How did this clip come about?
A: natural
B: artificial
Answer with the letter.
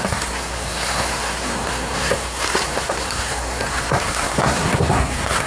B